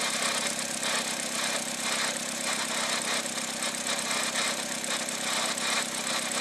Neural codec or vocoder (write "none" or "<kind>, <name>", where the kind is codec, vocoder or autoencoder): none